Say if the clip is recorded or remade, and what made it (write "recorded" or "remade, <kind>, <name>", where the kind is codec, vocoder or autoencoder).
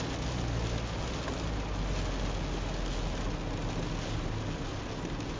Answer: recorded